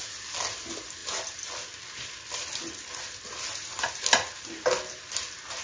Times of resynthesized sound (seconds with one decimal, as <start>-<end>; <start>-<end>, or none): none